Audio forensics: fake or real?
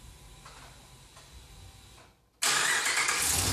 real